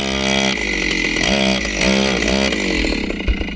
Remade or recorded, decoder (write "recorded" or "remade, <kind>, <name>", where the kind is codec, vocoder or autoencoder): recorded